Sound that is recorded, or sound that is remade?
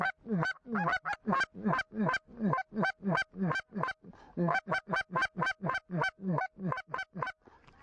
recorded